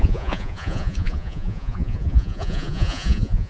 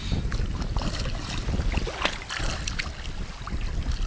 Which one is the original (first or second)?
second